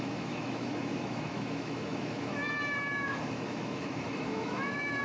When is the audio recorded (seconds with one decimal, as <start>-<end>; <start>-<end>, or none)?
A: 2.4-2.9